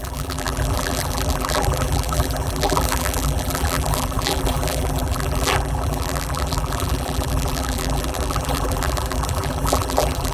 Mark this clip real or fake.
fake